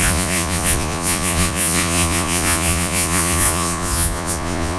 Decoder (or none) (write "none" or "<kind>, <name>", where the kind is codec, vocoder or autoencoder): vocoder, Vocos